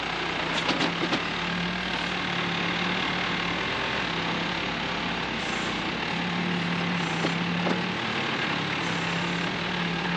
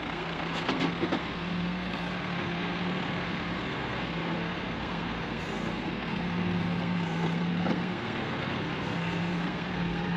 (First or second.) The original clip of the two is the first